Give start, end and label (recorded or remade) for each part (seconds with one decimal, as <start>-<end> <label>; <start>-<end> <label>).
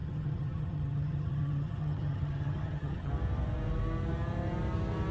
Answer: 0.0-3.1 remade; 3.1-5.1 recorded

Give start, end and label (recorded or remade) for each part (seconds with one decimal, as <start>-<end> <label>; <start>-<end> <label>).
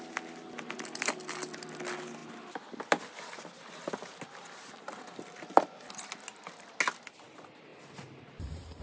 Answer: 0.0-8.8 recorded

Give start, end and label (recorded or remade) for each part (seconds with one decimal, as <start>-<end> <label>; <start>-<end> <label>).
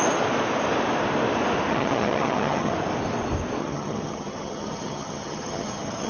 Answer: 0.0-1.7 recorded; 1.7-2.7 remade; 2.7-3.6 recorded; 3.6-6.1 remade